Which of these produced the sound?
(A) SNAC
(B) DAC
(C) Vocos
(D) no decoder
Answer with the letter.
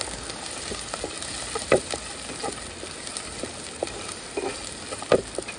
D